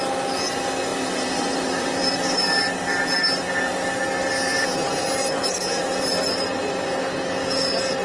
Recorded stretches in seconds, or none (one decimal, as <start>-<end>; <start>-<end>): 0.0-0.9; 4.0-5.8; 6.4-8.0